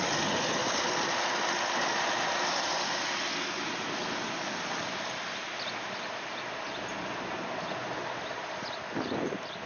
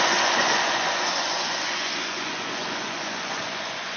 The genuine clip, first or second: first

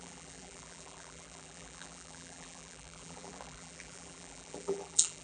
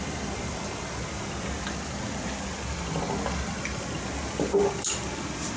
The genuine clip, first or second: second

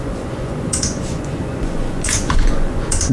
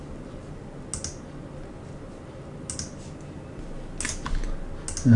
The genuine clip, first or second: second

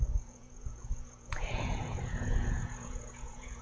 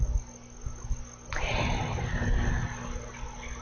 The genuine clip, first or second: second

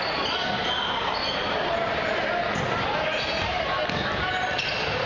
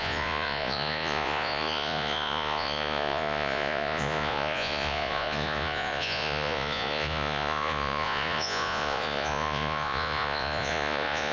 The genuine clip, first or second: first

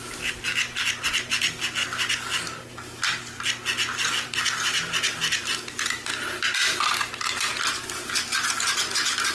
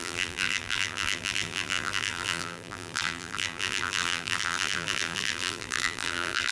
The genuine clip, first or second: first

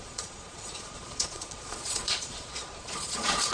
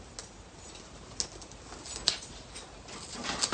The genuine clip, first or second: second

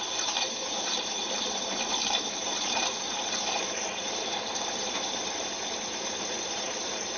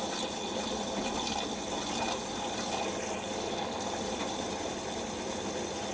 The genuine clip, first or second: second